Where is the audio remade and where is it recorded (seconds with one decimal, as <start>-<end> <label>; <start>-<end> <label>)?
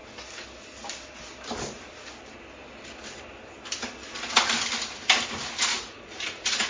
0.0-5.7 recorded; 5.7-6.7 remade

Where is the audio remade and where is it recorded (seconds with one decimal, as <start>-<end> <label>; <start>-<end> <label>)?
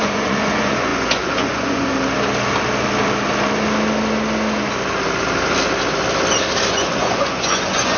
0.0-1.9 remade; 1.9-6.7 recorded; 6.7-8.0 remade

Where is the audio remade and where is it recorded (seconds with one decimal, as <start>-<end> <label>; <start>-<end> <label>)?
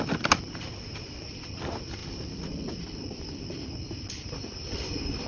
0.0-2.0 recorded; 2.0-3.4 remade; 3.4-5.3 recorded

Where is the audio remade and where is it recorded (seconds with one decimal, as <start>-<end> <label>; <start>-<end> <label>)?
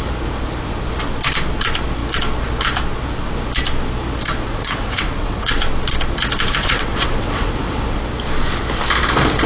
0.0-4.5 recorded; 4.5-5.6 remade; 5.6-6.6 recorded; 6.6-8.0 remade; 8.0-9.5 recorded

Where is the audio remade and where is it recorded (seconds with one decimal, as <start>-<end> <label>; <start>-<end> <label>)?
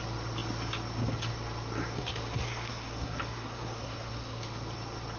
0.0-1.9 recorded; 1.9-4.4 remade; 4.4-5.2 recorded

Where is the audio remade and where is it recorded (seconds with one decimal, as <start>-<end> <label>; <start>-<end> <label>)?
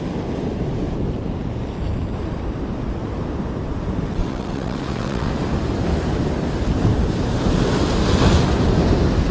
0.0-4.2 recorded; 4.2-5.3 remade; 5.3-9.3 recorded